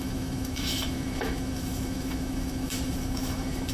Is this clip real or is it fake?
fake